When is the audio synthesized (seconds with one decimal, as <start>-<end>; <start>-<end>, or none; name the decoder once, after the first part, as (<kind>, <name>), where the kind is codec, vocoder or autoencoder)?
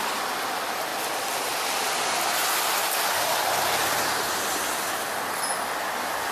none